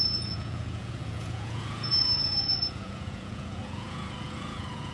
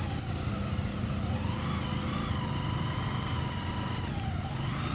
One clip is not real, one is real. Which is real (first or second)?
second